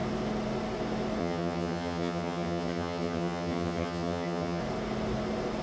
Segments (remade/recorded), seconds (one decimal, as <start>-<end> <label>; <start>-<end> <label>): 0.0-1.2 recorded; 1.2-4.6 remade; 4.6-5.6 recorded

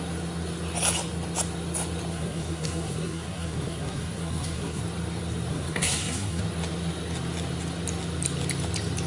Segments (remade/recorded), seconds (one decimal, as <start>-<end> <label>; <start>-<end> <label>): 0.0-2.1 recorded; 2.1-4.8 remade; 4.8-5.5 recorded; 5.5-6.4 remade; 6.4-9.1 recorded

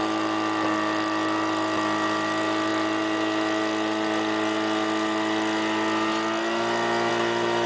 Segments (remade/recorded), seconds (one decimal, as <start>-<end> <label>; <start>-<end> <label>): 0.0-7.7 recorded

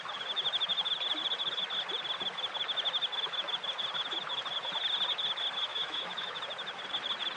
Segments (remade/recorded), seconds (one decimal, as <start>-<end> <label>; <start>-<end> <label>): 0.0-5.7 recorded; 5.7-6.4 remade; 6.4-7.4 recorded